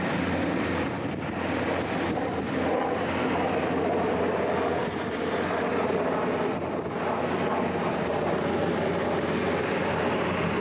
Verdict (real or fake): real